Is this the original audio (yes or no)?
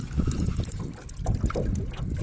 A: yes